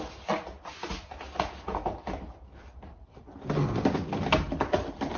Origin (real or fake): real